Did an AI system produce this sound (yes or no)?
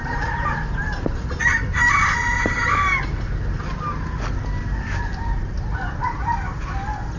no